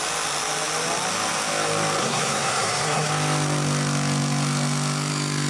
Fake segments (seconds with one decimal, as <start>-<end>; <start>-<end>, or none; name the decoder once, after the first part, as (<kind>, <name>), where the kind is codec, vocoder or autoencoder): 2.0-3.1 (codec, SNAC)